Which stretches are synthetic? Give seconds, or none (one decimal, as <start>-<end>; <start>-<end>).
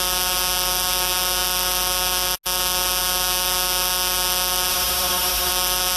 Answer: 4.7-5.5